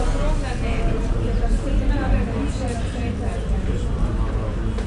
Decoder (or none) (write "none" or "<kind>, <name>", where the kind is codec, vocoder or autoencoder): none